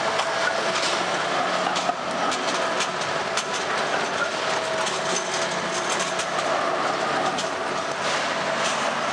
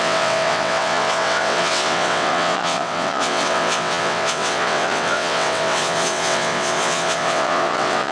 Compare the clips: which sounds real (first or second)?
first